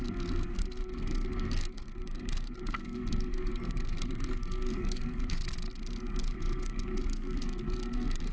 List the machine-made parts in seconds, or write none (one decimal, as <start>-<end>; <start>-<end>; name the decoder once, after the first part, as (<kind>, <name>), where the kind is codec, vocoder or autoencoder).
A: 0.0-5.4 (codec, SNAC); 6.2-8.3